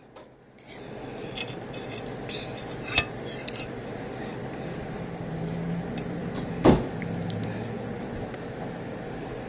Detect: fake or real real